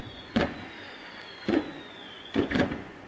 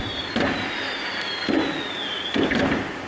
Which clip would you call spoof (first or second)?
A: first